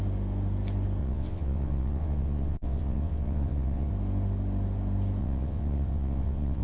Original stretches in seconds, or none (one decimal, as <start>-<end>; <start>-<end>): 0.0-1.0; 3.9-5.2